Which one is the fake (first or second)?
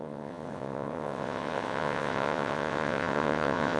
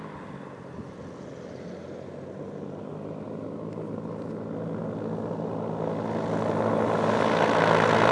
first